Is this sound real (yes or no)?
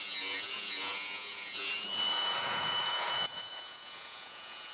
no